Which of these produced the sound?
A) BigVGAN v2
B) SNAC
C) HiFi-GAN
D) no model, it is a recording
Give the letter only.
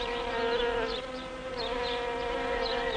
D